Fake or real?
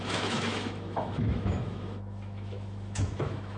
fake